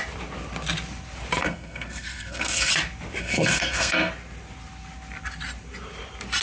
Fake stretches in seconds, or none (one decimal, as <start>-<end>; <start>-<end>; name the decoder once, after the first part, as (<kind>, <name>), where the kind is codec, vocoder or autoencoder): 1.4-2.7 (codec, SNAC); 3.2-4.1